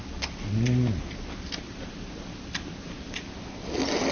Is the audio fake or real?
real